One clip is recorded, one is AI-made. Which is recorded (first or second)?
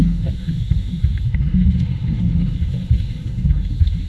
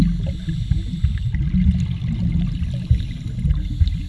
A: second